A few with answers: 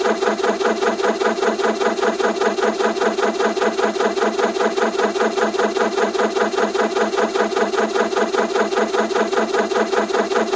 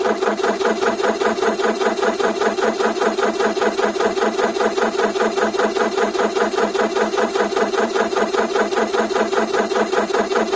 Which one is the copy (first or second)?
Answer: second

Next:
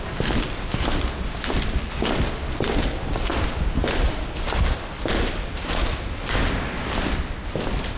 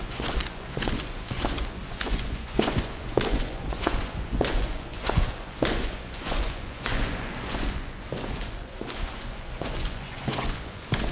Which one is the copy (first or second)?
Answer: second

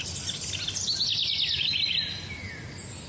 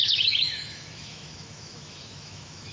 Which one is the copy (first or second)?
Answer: second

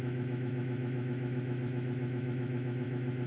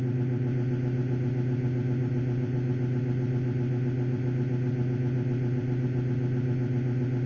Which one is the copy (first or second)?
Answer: first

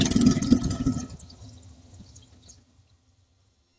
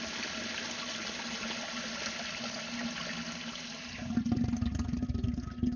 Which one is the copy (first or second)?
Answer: first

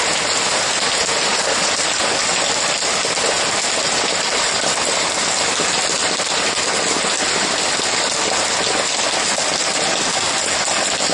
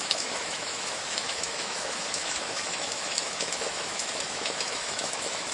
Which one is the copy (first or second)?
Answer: second